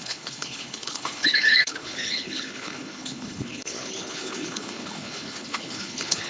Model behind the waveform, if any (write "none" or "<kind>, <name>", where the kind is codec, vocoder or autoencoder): codec, HILCodec